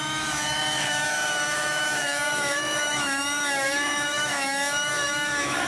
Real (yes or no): no